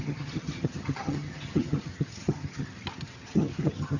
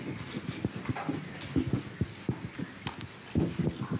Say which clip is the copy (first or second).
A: first